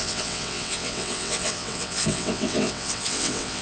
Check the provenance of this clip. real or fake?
fake